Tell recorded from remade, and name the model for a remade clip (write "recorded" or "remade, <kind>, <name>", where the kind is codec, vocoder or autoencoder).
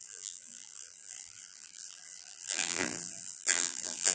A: remade, vocoder, BigVGAN v2